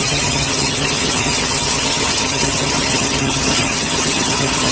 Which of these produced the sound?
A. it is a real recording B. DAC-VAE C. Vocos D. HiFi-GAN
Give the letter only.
D